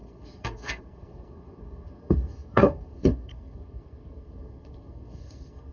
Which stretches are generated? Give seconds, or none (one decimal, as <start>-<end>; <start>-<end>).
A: 0.0-5.7